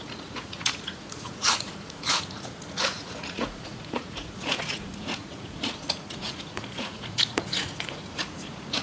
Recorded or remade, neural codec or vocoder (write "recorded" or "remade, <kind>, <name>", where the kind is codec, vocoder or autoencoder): remade, vocoder, Vocos